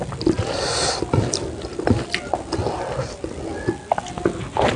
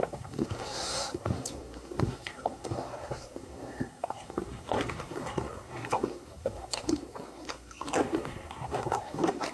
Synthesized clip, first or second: second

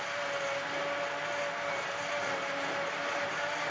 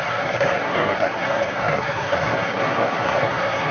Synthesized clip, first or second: second